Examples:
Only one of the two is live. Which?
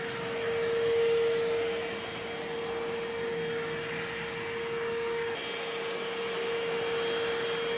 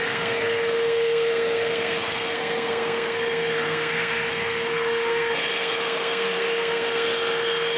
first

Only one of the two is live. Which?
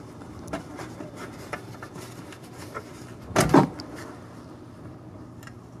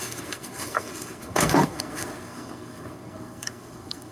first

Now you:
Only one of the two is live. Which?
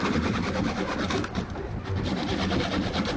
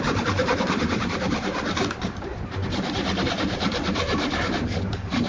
first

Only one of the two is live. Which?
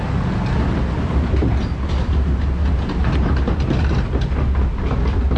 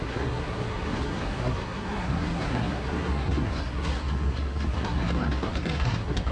first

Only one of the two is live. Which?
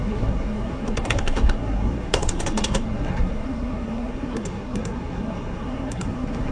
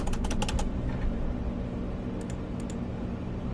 second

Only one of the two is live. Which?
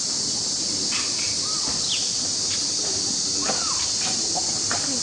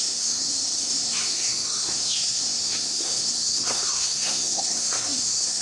first